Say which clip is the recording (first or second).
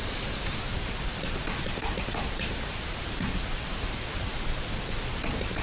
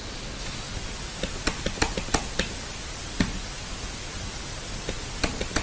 second